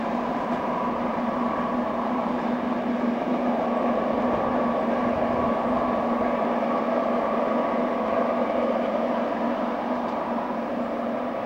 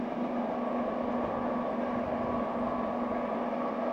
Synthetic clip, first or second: first